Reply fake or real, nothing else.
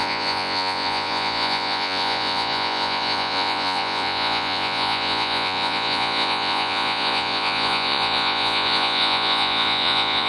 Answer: fake